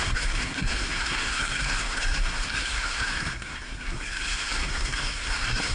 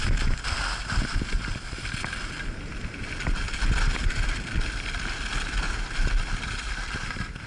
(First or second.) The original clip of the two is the second